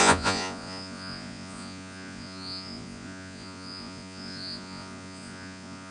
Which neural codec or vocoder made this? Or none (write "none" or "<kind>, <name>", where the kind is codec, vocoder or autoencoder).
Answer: vocoder, Vocos